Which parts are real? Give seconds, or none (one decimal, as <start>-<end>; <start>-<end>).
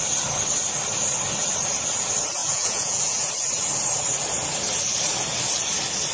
0.0-2.4; 3.3-6.1